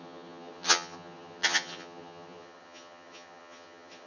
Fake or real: fake